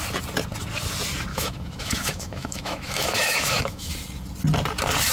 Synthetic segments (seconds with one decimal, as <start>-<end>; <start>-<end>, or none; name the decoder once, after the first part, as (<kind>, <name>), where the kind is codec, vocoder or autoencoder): 1.3-3.9 (autoencoder, DAC-VAE)